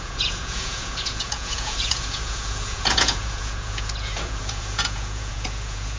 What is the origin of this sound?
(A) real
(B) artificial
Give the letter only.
B